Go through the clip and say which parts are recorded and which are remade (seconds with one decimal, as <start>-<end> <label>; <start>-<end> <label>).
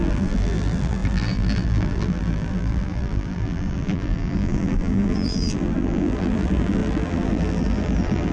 0.0-8.3 remade